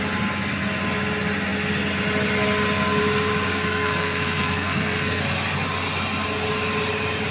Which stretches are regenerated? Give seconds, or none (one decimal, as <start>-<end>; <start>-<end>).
3.5-5.2